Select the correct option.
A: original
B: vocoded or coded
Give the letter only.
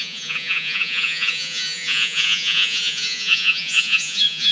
B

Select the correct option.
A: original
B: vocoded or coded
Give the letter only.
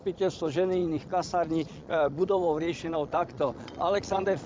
B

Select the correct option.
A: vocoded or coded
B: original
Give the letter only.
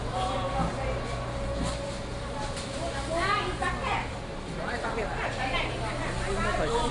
B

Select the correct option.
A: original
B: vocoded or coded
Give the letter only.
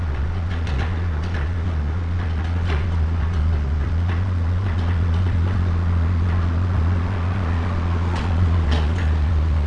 B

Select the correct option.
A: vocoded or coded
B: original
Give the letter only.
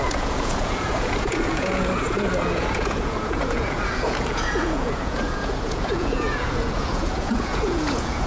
A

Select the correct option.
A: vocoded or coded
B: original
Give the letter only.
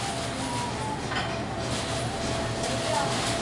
B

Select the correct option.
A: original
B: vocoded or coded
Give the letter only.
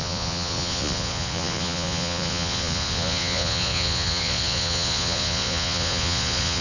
B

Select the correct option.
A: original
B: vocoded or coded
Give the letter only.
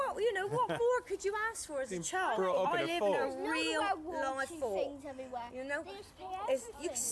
A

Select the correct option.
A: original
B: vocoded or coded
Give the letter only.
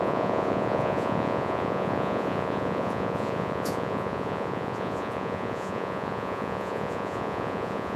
B